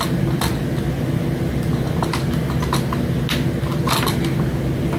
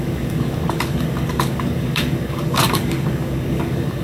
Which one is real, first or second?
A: first